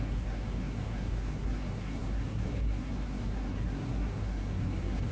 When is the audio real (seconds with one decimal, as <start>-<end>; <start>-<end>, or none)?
none